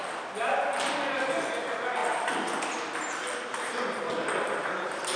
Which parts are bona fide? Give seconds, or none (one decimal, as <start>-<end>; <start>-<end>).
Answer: 0.0-5.2